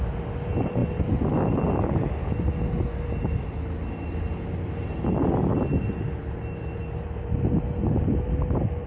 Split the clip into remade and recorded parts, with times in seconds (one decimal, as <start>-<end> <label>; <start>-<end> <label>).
0.0-8.9 recorded